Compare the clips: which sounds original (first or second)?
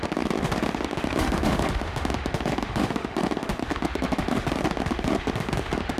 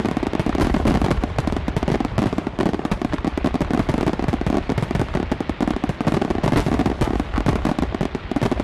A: second